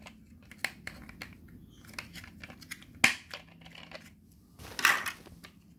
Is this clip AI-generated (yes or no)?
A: no